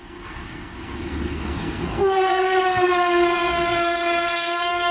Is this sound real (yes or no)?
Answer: no